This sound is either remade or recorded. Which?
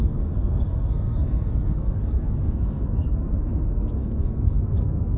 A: remade